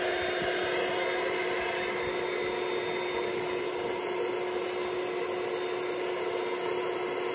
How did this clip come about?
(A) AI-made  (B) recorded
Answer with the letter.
B